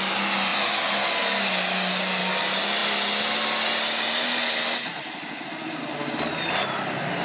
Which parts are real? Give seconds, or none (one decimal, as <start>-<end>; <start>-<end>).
0.0-7.2

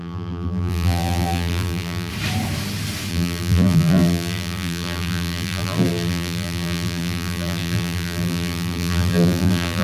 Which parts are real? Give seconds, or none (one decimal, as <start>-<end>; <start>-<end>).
2.1-3.1

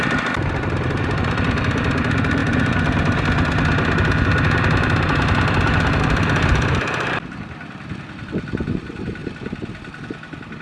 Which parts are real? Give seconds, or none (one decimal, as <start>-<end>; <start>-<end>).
2.4-6.0; 9.2-10.6

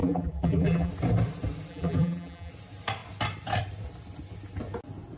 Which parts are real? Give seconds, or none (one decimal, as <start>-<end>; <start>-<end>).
0.9-1.7; 2.5-5.2

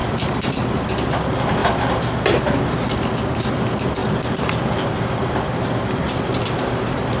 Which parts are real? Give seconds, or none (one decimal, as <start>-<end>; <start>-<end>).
0.8-7.2

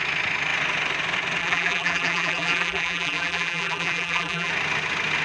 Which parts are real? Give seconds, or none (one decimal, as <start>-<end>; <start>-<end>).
0.0-1.4; 4.5-5.2